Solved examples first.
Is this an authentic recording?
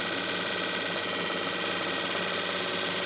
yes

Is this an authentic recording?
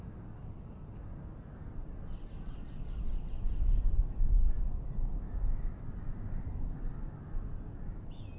yes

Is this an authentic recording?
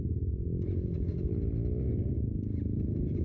yes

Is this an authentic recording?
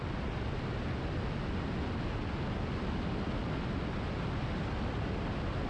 yes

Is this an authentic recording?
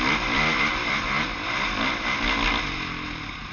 yes